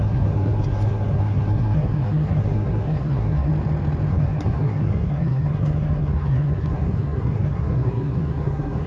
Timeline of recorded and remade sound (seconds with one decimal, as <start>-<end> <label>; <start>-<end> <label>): 0.0-3.5 remade; 3.5-4.1 recorded; 4.1-8.9 remade